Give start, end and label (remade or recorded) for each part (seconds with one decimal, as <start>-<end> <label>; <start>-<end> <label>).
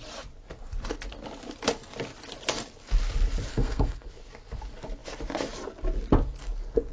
0.0-3.5 recorded; 3.5-4.1 remade; 4.1-6.9 recorded